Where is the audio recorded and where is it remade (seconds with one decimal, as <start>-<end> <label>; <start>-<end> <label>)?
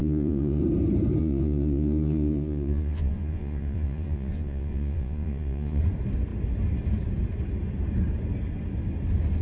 0.0-0.6 remade; 0.6-1.2 recorded; 1.2-5.8 remade; 5.8-9.4 recorded